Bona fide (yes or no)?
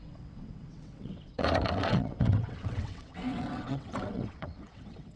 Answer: no